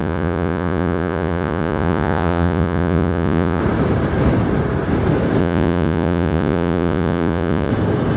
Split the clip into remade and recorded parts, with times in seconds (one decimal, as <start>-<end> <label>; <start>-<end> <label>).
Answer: 0.0-3.6 remade; 3.6-5.4 recorded; 5.4-7.7 remade; 7.7-8.2 recorded